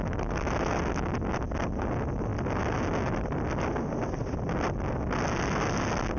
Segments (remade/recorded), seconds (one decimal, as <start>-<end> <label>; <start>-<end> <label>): 0.0-6.2 recorded

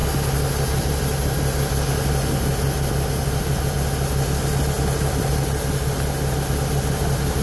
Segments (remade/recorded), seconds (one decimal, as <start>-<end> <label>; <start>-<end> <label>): 0.0-7.4 recorded